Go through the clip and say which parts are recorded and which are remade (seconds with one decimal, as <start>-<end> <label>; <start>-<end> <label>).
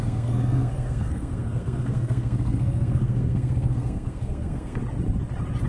0.0-4.8 remade; 4.8-5.7 recorded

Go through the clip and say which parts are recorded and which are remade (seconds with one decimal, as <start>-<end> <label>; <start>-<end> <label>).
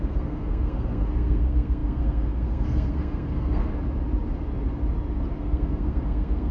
0.0-3.7 remade; 3.7-5.4 recorded; 5.4-6.5 remade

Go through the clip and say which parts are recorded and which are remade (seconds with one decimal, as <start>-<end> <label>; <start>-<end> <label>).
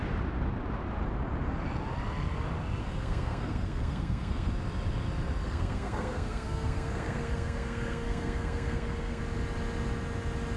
0.0-2.8 recorded; 2.8-4.5 remade; 4.5-5.4 recorded; 5.4-9.2 remade; 9.2-10.6 recorded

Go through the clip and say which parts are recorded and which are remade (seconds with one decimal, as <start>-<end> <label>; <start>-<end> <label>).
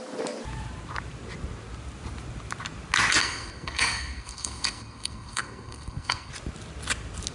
0.0-3.2 recorded; 3.2-6.3 remade; 6.3-7.3 recorded